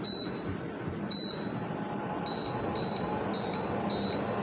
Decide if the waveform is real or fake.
fake